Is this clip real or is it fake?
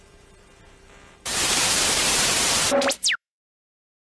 fake